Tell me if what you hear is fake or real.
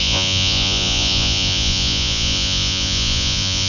fake